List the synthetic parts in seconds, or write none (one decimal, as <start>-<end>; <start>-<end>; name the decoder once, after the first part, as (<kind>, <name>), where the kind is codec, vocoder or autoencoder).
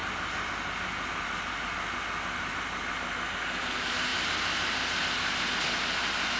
none